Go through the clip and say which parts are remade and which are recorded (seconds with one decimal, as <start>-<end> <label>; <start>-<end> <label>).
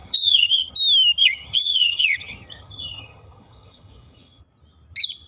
0.0-0.7 remade; 0.7-1.2 recorded; 1.2-4.4 remade; 4.4-5.3 recorded